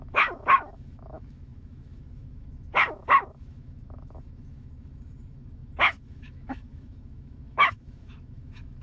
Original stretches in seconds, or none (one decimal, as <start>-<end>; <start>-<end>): none